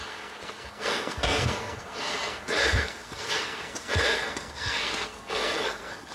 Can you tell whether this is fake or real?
fake